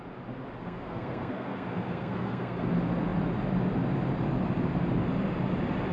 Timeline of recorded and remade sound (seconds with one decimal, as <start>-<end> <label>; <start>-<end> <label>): 0.0-0.6 recorded; 0.6-2.7 remade; 2.7-5.9 recorded